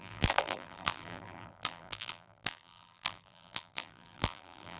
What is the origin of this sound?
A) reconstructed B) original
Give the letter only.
A